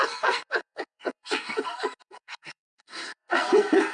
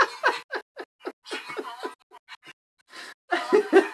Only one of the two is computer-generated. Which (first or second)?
first